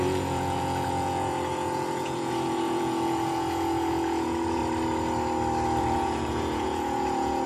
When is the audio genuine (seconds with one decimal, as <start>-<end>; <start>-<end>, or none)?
4.6-5.8